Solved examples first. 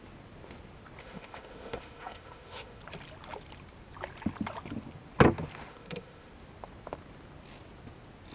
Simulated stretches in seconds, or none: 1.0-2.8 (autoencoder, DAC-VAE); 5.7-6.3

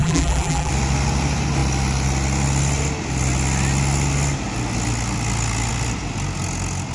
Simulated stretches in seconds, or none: 0.0-0.7 (vocoder, BigVGAN v2)

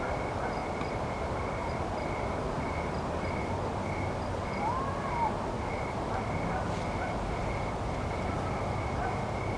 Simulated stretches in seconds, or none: 0.6-1.7 (vocoder, BigVGAN v2)

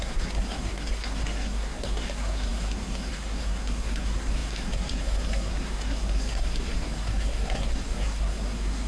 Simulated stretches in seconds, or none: 0.0-8.9 (codec, SNAC)

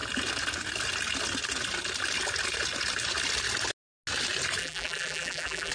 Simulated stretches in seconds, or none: 4.6-5.7 (vocoder, BigVGAN v2)